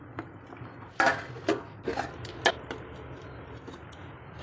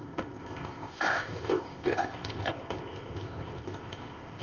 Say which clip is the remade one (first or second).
second